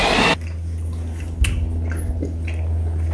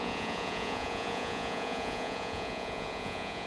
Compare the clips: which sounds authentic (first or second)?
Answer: first